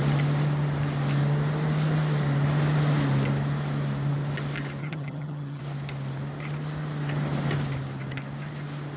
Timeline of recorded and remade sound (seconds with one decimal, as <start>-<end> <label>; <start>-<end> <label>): 0.0-4.8 recorded; 4.8-5.6 remade; 5.6-9.0 recorded